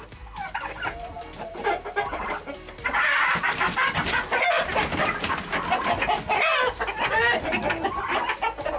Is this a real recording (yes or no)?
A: yes